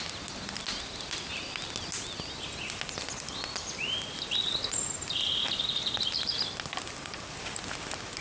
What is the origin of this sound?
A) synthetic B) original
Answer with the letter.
B